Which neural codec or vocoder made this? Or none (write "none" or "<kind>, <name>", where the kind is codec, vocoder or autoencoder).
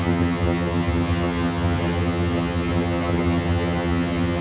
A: vocoder, HiFi-GAN